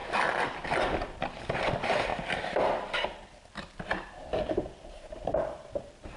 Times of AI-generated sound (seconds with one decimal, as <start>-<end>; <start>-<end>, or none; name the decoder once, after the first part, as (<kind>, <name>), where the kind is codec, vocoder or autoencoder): 0.0-1.6 (vocoder, BigVGAN v2); 2.1-5.8